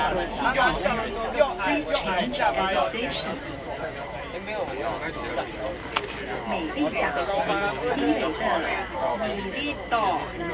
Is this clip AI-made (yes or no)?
no